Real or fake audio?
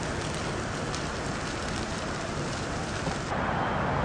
real